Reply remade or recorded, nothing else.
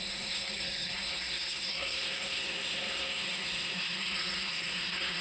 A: remade